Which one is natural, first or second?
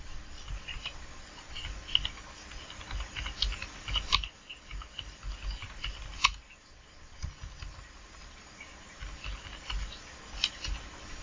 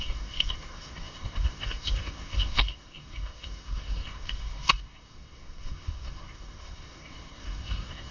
first